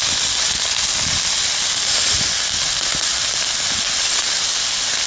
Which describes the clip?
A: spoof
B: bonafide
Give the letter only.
B